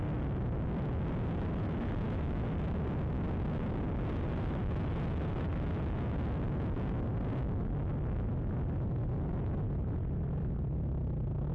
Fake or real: real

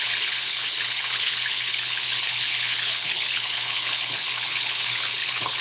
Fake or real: fake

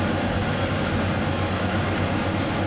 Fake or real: real